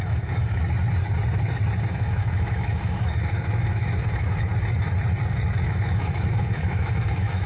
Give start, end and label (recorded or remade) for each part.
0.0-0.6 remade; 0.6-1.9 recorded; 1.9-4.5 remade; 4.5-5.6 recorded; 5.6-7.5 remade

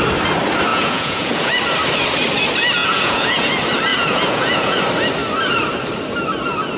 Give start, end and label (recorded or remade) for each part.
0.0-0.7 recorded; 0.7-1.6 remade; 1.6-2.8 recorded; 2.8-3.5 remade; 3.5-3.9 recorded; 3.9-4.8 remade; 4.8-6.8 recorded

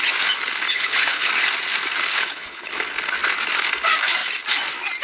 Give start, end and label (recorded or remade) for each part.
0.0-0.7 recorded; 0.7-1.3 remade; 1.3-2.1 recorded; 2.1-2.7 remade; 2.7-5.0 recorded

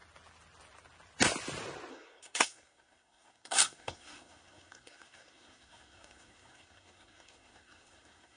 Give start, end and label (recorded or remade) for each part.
0.0-1.9 recorded; 1.9-8.4 remade